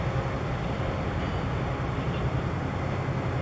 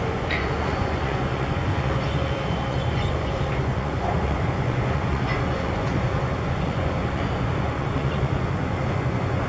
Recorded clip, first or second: first